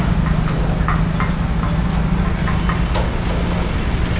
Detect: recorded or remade recorded